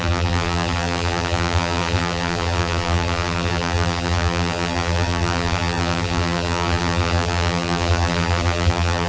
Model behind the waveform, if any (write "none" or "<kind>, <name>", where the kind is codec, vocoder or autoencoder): vocoder, BigVGAN v2